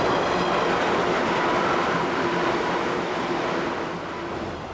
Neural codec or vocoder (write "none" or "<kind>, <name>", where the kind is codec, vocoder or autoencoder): none